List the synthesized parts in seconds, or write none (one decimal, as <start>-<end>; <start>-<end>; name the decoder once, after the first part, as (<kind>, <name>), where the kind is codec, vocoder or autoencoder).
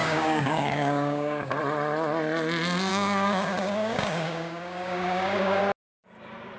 0.0-1.6 (codec, DAC); 2.9-5.6